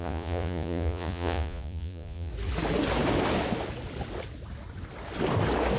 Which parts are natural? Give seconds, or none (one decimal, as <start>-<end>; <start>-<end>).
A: 2.3-5.8